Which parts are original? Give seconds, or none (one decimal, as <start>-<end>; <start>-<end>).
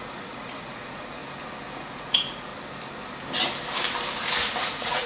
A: 1.2-1.7; 2.5-4.6